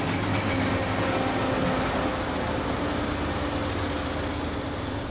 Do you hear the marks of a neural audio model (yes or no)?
no